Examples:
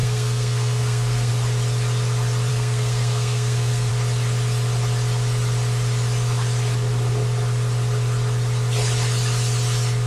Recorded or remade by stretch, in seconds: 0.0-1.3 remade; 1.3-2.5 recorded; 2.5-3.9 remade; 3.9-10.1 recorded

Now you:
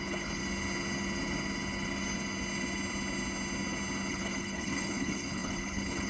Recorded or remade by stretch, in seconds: 0.0-0.4 remade; 0.4-4.1 recorded; 4.1-6.1 remade

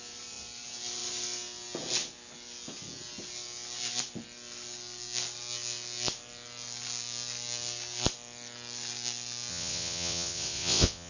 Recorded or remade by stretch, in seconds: 0.0-9.5 recorded; 9.5-11.1 remade

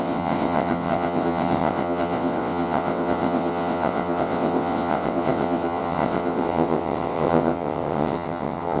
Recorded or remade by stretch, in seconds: 0.0-8.8 remade

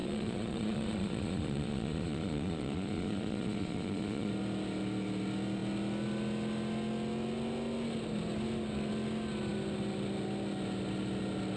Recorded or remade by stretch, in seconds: 0.0-4.3 remade; 4.3-11.6 recorded